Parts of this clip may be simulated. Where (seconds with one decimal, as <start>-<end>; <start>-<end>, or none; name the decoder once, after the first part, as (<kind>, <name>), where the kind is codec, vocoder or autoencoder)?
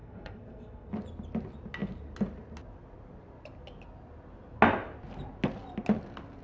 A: 0.0-0.9 (codec, SNAC)